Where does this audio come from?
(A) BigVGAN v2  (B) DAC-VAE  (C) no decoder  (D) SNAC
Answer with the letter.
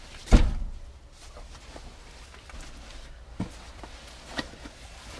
C